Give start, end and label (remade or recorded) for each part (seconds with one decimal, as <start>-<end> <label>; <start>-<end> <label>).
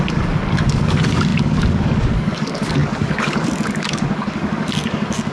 0.0-5.3 remade